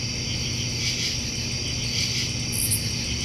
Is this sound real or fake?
real